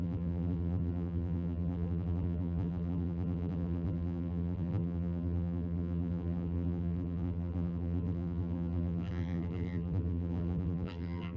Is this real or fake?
fake